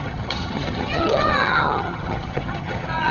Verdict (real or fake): fake